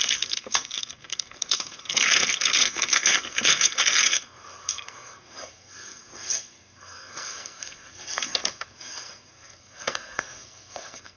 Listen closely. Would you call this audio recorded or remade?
remade